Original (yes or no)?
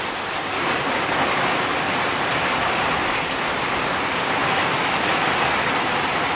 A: yes